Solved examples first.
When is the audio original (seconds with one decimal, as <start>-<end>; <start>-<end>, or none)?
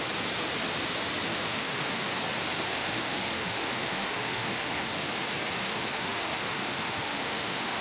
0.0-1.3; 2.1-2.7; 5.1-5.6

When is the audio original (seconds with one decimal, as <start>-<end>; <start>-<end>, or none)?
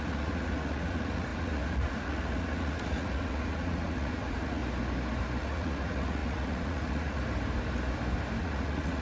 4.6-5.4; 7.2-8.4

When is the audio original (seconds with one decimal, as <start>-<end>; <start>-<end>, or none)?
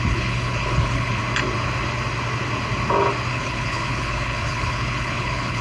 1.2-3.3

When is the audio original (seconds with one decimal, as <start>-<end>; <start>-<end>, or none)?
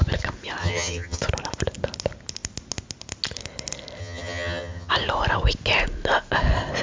0.0-0.6; 1.2-4.0; 4.9-6.8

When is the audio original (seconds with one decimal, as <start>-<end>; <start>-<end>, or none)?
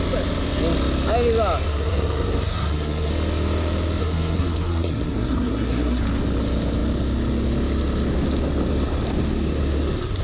0.0-1.7; 3.1-4.0; 6.0-10.2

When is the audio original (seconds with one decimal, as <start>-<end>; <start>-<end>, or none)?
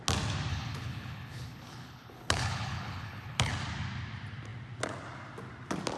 0.0-0.5; 3.5-6.0